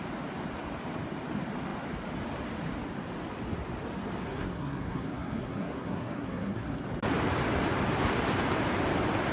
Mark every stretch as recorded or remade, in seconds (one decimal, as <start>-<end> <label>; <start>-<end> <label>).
0.0-4.2 recorded; 4.2-6.8 remade; 6.8-9.3 recorded